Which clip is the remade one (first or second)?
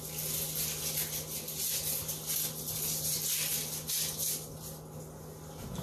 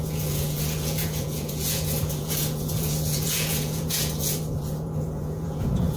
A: second